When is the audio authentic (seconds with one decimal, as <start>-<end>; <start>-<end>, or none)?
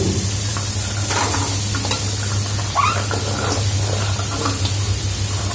0.0-5.5